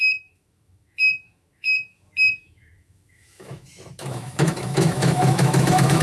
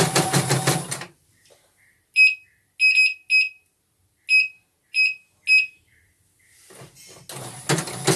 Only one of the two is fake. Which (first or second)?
first